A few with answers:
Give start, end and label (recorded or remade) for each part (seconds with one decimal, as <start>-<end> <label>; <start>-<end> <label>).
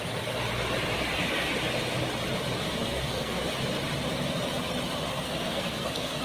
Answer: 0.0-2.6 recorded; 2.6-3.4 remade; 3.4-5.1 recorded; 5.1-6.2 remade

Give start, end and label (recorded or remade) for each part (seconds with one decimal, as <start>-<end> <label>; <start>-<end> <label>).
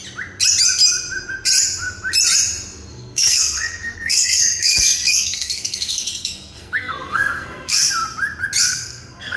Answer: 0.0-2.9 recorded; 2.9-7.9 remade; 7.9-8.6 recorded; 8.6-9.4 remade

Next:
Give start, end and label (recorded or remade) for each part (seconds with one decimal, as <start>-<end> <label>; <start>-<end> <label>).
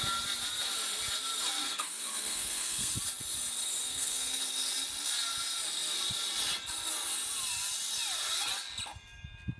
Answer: 0.0-1.6 recorded; 1.6-2.9 remade; 2.9-3.8 recorded; 3.8-4.4 remade; 4.4-9.6 recorded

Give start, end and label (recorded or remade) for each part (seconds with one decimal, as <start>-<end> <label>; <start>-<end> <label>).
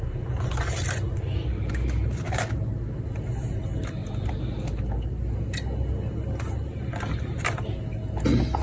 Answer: 0.0-8.6 recorded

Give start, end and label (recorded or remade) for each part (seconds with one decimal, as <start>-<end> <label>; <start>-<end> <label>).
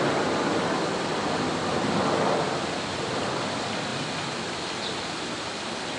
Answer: 0.0-6.0 recorded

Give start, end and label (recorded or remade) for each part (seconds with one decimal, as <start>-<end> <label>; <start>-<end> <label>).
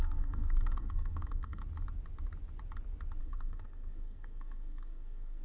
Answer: 0.0-1.6 remade; 1.6-3.2 recorded; 3.2-5.4 remade